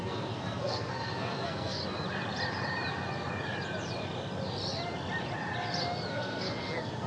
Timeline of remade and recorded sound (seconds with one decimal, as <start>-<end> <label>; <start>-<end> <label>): 0.0-1.8 remade; 1.8-6.1 recorded; 6.1-7.1 remade